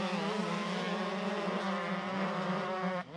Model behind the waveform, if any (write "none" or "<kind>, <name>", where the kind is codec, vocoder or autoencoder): none